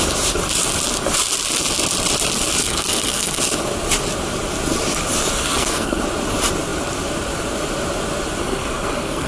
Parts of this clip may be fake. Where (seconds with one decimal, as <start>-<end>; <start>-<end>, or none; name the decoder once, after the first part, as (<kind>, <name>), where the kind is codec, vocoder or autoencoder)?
2.6-3.4 (codec, SNAC); 5.3-6.0; 8.4-9.3